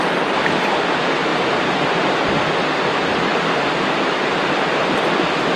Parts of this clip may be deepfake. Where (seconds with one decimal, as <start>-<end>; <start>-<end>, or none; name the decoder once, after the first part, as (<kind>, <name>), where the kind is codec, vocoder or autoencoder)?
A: 1.3-2.4 (vocoder, BigVGAN v2); 3.3-4.4